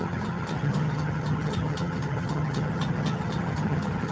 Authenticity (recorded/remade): remade